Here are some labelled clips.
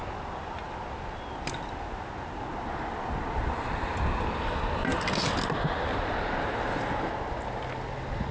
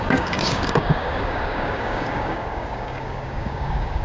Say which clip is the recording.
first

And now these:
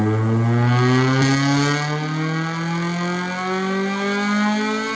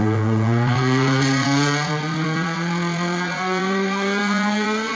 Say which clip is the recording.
first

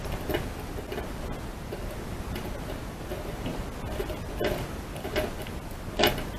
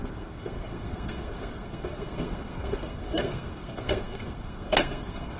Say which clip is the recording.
first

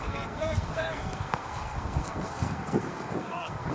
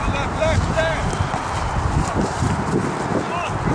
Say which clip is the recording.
second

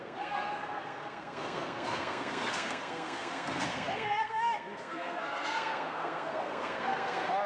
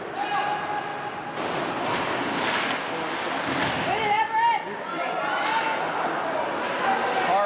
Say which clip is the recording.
second